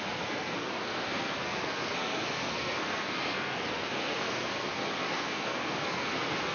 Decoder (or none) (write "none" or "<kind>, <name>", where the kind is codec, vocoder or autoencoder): codec, SNAC